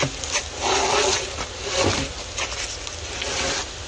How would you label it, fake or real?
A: real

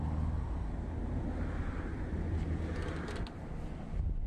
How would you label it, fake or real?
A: real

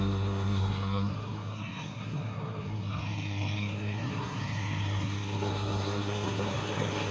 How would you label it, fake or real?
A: fake